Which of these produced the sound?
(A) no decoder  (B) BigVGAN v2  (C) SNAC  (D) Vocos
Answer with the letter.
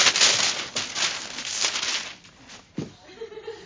A